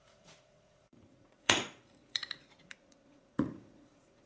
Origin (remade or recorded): remade